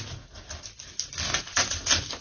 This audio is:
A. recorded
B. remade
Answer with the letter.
A